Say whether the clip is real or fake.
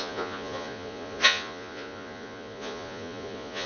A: fake